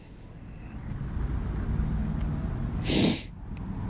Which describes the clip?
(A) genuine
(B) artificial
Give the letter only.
A